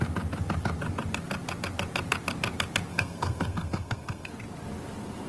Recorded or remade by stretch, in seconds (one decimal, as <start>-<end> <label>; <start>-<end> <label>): 0.0-2.9 recorded; 2.9-4.3 remade; 4.3-5.3 recorded